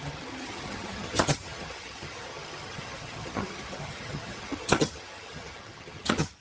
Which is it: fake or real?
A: fake